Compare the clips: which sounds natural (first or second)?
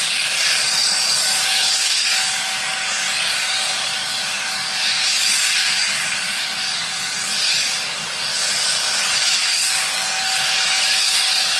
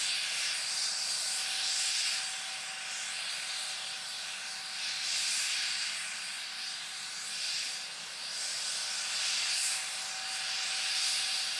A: second